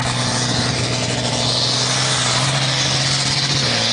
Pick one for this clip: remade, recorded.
recorded